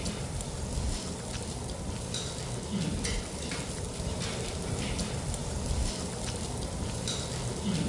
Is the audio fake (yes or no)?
no